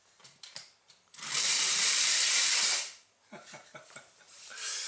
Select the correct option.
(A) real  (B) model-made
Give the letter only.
B